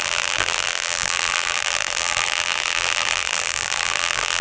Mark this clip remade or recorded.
remade